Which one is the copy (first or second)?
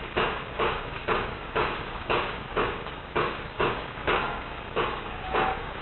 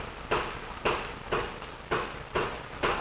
first